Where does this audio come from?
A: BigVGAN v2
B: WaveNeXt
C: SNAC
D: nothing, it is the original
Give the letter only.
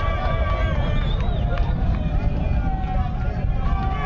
D